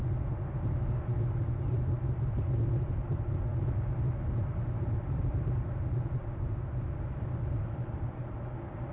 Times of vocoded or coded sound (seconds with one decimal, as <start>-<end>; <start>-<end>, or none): none